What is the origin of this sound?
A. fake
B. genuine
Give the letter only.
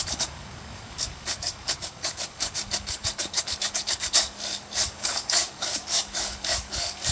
A